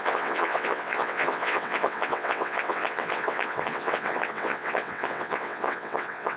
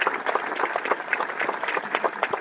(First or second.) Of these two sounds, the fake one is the first